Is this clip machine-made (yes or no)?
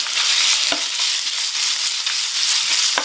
no